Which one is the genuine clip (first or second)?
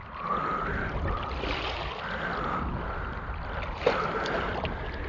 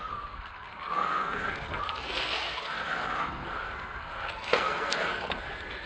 first